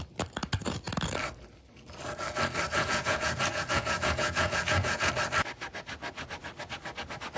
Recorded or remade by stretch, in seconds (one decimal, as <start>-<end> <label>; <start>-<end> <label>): 0.0-2.7 recorded; 2.7-5.1 remade; 5.1-7.4 recorded